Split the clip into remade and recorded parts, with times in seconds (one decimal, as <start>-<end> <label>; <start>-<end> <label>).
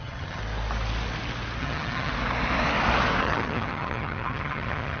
0.0-0.4 remade; 0.4-1.6 recorded; 1.6-2.1 remade; 2.1-3.2 recorded; 3.2-5.0 remade